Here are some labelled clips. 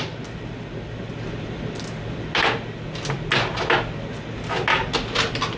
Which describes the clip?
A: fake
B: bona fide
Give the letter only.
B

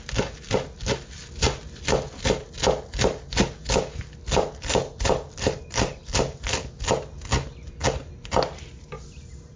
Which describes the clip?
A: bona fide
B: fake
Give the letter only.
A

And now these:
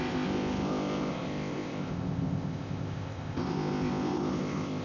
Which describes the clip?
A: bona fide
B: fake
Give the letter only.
B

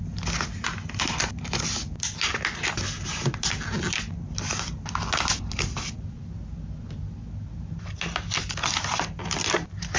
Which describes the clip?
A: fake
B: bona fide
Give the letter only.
B